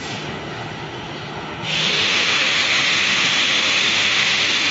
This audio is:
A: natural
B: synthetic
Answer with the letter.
B